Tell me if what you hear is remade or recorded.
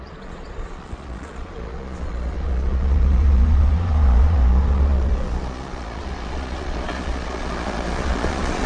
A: remade